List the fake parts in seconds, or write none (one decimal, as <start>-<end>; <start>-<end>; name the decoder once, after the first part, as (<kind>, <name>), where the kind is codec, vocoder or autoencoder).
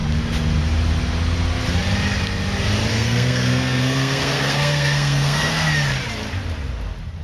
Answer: 2.9-5.5 (codec, SNAC)